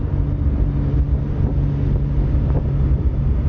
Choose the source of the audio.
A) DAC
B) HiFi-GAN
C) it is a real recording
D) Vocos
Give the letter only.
C